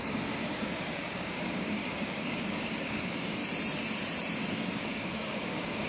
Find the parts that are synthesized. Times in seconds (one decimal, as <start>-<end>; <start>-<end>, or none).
0.0-3.4; 4.5-5.9

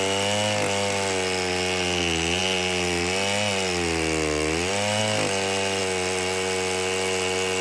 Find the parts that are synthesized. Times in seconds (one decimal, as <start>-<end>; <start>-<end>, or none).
none

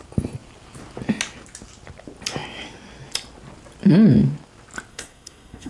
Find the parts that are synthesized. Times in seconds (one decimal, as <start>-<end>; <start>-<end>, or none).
4.9-5.7

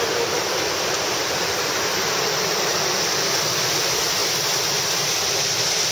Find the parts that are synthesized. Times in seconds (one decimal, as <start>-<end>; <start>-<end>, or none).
none

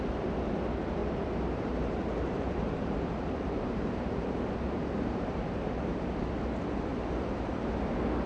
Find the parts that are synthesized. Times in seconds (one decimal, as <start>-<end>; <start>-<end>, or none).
1.0-6.0; 6.9-7.5

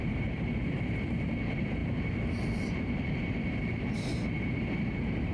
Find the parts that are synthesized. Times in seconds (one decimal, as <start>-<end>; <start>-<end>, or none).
0.0-5.3

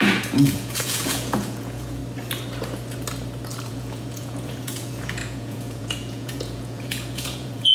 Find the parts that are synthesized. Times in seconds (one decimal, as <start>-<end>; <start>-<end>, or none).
0.0-2.0; 3.7-7.7